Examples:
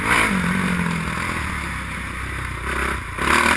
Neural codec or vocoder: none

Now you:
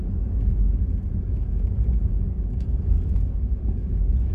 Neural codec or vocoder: codec, DAC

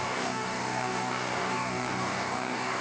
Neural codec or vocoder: codec, DAC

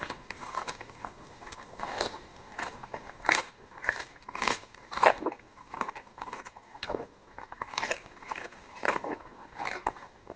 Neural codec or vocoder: codec, DAC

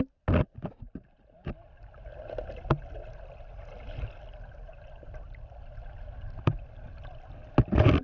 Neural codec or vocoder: none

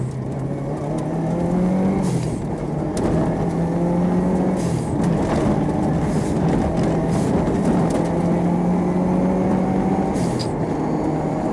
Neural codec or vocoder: none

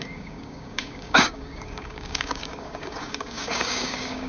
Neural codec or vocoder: codec, DAC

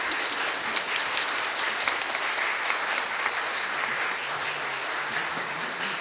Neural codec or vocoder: none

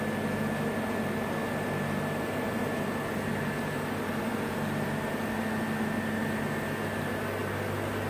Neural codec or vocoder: none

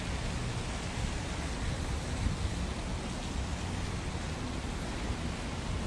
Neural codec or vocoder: none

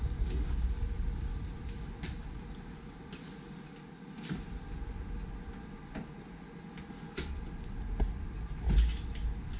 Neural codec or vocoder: none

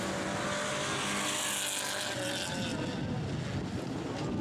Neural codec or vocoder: none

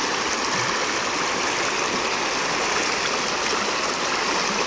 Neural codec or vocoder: none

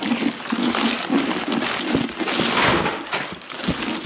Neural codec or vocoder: none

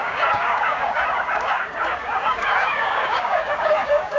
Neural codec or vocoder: codec, DAC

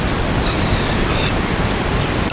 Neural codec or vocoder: none